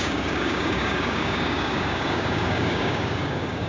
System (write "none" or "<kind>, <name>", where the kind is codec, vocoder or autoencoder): codec, DAC